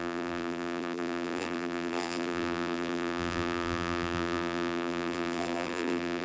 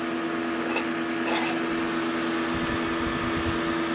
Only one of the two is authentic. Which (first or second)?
second